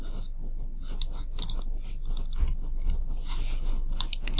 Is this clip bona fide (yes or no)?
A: yes